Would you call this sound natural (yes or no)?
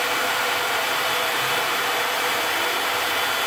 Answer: yes